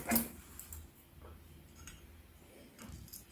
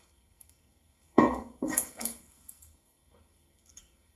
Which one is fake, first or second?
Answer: second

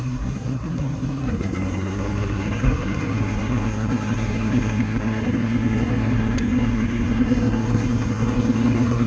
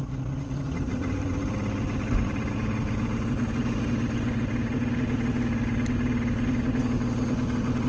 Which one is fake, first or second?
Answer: first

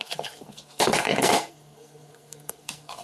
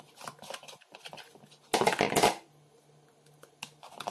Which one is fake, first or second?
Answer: first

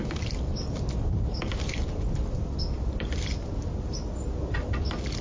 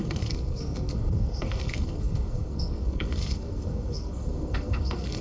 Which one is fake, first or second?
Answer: second